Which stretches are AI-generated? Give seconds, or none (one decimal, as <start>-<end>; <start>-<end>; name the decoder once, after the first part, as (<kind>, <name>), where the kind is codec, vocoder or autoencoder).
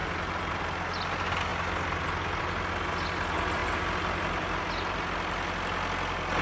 none